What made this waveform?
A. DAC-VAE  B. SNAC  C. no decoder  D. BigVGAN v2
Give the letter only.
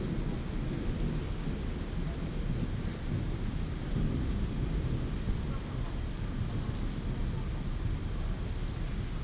C